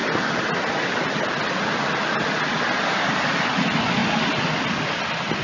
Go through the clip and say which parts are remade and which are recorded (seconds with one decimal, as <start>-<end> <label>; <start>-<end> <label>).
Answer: 0.0-5.4 recorded